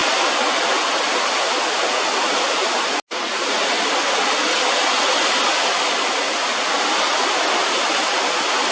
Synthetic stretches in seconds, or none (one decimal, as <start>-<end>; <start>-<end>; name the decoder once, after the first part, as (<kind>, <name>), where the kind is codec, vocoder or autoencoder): none